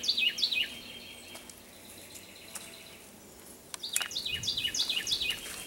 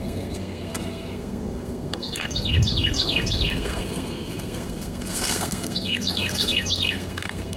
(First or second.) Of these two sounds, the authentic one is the first